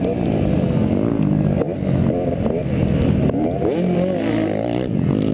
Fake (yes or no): no